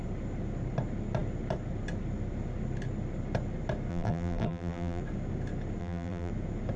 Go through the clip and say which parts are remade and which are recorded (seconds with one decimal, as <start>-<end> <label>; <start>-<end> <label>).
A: 0.0-3.9 recorded; 3.9-5.0 remade; 5.0-5.8 recorded; 5.8-6.3 remade; 6.3-6.8 recorded